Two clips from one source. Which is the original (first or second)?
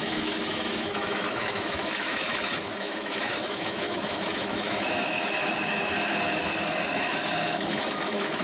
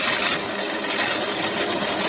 second